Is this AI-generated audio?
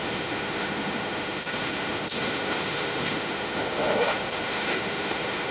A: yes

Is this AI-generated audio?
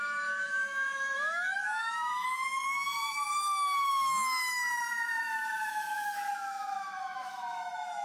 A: yes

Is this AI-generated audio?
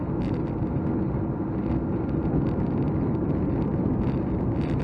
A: no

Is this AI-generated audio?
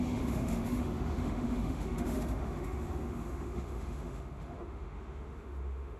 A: yes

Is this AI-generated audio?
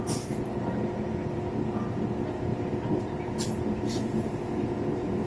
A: no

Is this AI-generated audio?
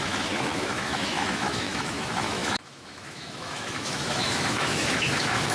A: yes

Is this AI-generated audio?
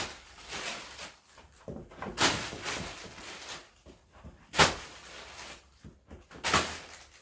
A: no